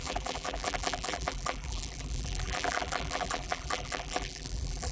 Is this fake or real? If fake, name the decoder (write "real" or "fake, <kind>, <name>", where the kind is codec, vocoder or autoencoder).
fake, vocoder, BigVGAN v2